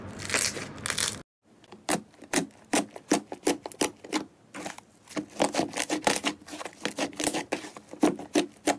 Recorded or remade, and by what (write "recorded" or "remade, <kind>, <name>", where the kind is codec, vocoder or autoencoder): recorded